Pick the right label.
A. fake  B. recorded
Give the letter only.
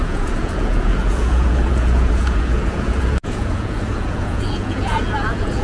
A